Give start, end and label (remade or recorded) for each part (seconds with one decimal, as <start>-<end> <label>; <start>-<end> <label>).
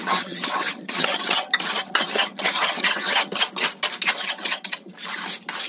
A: 0.0-3.4 remade; 3.4-4.1 recorded; 4.1-4.9 remade; 4.9-5.7 recorded